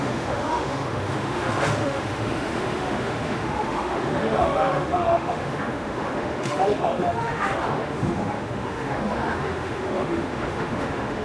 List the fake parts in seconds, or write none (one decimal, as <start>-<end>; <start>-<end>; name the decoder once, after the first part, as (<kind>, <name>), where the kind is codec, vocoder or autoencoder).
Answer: 0.0-11.2 (autoencoder, DAC-VAE)